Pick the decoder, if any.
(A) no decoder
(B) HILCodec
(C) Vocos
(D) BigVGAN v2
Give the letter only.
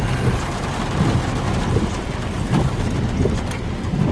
D